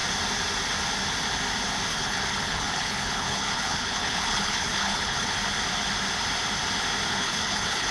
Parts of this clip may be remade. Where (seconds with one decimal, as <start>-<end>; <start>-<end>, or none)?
1.9-5.3; 7.1-7.9